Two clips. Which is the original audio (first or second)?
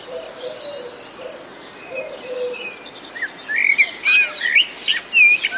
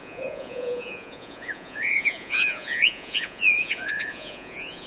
first